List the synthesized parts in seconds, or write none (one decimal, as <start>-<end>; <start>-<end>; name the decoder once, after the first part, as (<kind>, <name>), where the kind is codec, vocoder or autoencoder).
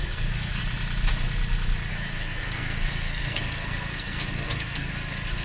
0.0-0.6 (codec, SNAC); 1.9-4.9